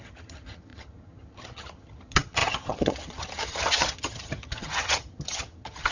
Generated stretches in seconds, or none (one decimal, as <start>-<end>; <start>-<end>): 0.0-5.9